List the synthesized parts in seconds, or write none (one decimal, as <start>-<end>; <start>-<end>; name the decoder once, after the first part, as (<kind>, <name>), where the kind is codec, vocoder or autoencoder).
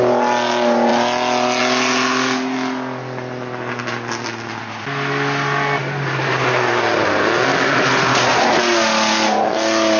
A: none